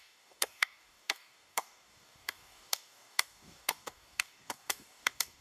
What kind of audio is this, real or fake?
fake